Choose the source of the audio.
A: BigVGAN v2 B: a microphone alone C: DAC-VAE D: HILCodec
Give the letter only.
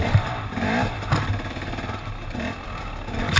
B